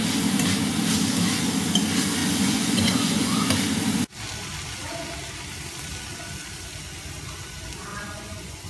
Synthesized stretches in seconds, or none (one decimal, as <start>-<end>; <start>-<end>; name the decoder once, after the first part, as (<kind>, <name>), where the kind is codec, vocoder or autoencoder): 2.2-3.5 (vocoder, Vocos); 7.9-8.7